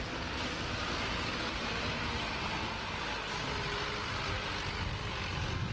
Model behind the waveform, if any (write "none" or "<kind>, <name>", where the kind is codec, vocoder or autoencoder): none